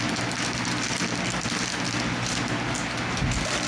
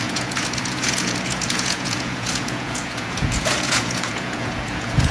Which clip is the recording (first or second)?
first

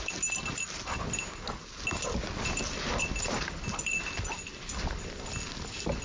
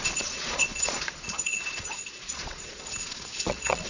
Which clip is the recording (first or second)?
first